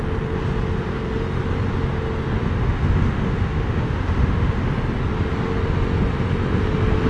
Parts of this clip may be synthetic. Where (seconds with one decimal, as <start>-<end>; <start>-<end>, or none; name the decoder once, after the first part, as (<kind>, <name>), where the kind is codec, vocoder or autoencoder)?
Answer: 2.4-4.6 (autoencoder, DAC-VAE)